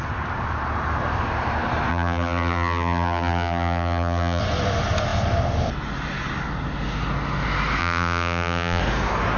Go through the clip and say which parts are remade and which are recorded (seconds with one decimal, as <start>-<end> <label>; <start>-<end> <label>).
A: 0.0-1.9 recorded; 1.9-4.4 remade; 4.4-7.8 recorded; 7.8-8.8 remade; 8.8-9.4 recorded